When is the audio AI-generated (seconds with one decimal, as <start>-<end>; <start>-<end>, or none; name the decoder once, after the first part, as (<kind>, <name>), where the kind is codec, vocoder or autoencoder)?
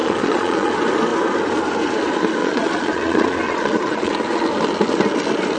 0.0-0.7 (vocoder, Vocos); 2.4-4.1